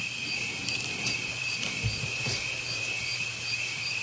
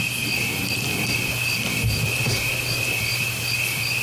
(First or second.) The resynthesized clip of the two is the first